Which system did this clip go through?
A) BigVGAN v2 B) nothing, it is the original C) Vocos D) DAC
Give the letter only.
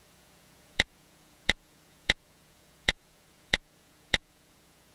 C